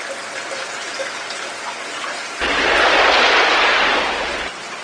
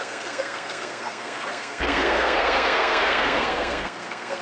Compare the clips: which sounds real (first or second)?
first